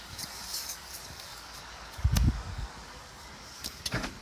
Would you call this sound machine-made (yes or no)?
yes